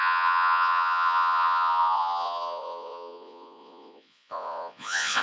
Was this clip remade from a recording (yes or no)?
yes